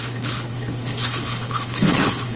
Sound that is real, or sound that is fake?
fake